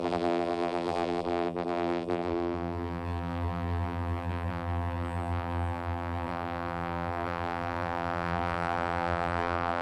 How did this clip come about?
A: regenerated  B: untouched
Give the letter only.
A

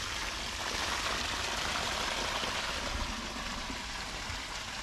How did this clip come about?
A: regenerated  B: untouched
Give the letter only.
B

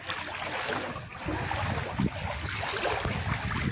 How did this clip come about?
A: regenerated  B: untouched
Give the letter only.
B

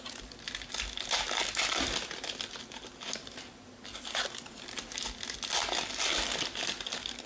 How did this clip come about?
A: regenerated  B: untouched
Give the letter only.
B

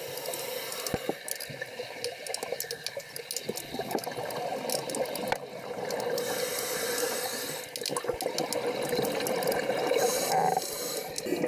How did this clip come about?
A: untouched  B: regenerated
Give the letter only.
A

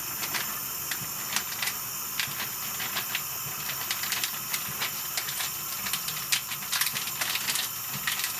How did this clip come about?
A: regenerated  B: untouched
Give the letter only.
B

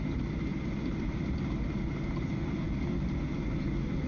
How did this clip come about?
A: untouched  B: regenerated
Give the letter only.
A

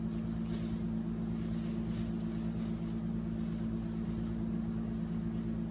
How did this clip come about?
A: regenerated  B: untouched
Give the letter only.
B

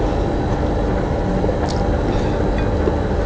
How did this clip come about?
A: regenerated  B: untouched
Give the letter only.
B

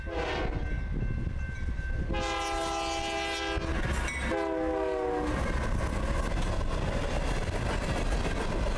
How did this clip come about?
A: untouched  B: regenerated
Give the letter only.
A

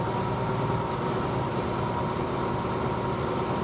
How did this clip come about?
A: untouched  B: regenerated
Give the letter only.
A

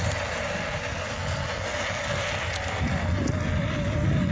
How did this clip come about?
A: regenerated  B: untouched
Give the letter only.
B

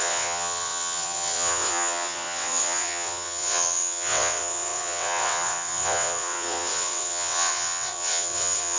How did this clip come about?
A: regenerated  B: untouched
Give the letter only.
A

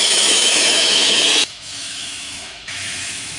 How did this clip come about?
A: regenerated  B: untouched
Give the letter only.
A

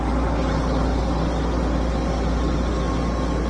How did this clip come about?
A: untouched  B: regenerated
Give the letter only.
A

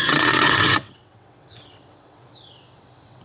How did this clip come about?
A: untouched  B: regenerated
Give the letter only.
B